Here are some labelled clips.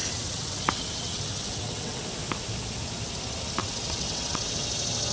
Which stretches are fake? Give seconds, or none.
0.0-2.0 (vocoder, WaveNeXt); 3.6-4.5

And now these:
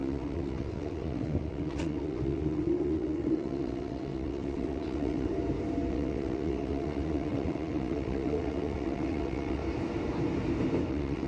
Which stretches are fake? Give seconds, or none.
0.0-5.3 (vocoder, WaveNeXt); 5.9-9.6; 10.9-11.3

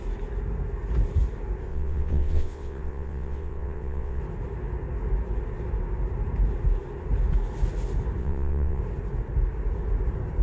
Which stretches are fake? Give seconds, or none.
1.7-4.2 (vocoder, WaveNeXt); 8.2-8.8

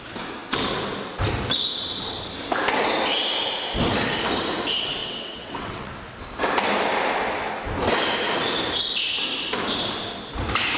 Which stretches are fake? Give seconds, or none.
5.0-5.9 (vocoder, WaveNeXt)

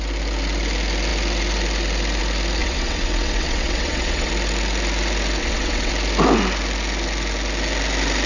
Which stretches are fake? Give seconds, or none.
2.6-4.3 (vocoder, WaveNeXt); 5.4-5.9

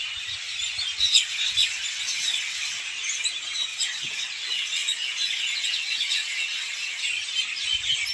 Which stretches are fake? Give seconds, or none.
1.0-2.8 (vocoder, WaveNeXt); 3.7-7.0

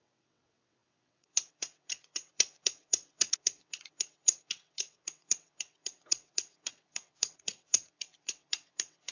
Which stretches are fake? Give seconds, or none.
0.0-9.1 (vocoder, WaveNeXt)

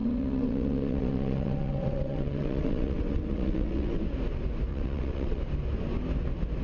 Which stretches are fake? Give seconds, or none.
0.0-4.0 (vocoder, WaveNeXt); 4.7-5.4